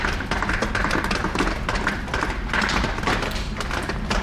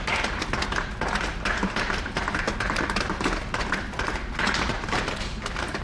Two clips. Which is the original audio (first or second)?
first